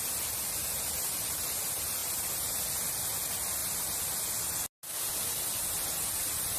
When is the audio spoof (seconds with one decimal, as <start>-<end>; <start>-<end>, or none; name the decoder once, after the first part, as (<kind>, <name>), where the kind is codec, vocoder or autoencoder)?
3.6-4.2 (vocoder, BigVGAN v2)